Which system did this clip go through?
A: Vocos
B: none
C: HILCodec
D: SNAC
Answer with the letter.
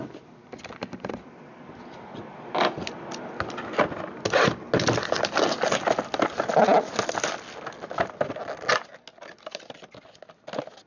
B